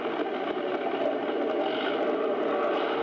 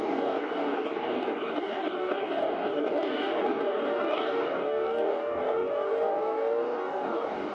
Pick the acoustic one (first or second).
first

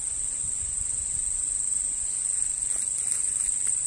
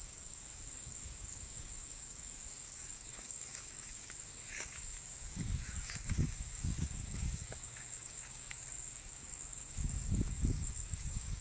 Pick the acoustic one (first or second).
first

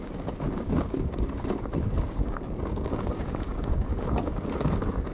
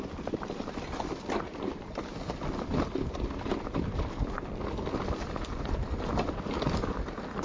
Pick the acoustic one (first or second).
second